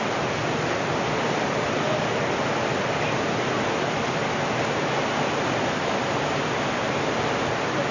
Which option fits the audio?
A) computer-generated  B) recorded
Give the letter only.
B